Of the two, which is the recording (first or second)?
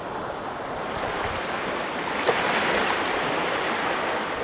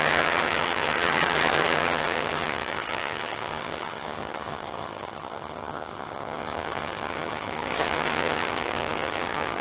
first